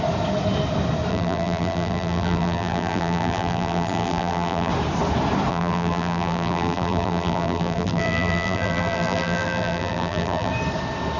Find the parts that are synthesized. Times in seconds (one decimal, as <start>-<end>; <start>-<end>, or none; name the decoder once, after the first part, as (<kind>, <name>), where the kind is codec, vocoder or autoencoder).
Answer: 1.1-4.7 (vocoder, BigVGAN v2); 5.5-10.5